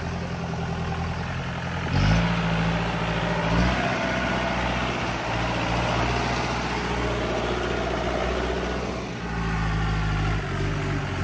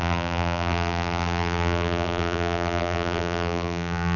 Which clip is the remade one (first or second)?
second